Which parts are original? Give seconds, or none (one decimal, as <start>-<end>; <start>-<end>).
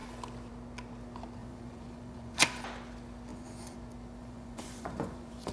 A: 0.0-1.4; 2.6-3.3; 3.8-4.2